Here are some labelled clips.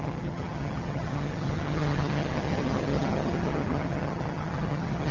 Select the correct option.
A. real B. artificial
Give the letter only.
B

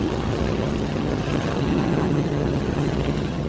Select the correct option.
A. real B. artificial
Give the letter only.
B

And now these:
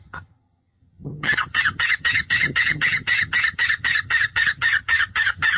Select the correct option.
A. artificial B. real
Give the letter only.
A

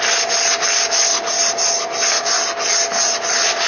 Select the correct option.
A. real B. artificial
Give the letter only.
A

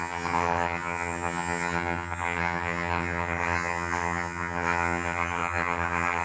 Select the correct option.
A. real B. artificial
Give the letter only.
B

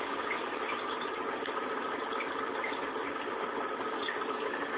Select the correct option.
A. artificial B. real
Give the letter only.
B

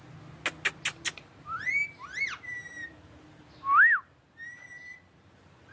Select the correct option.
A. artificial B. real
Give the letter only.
B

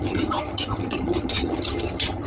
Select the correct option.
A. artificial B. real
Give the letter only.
A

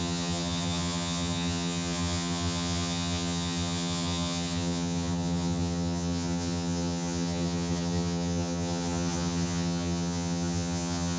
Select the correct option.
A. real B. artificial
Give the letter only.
B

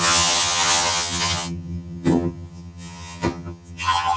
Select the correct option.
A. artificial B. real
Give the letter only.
A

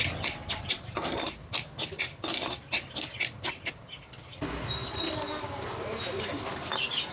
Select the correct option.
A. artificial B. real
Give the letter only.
B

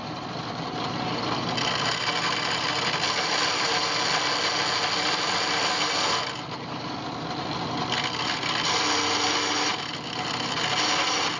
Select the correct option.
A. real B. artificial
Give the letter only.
A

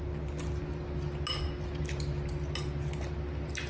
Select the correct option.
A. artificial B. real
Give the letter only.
B